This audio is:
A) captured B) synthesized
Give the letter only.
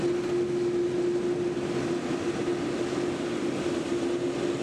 A